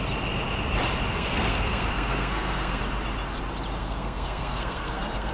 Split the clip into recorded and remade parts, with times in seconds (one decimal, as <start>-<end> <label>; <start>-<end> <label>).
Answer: 0.0-1.1 recorded; 1.1-2.8 remade; 2.8-3.8 recorded; 3.8-5.3 remade